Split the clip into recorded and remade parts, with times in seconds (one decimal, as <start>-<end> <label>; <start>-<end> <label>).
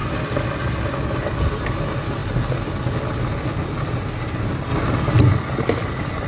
0.0-6.3 recorded